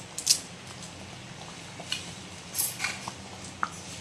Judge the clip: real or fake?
real